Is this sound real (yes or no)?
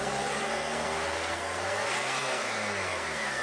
no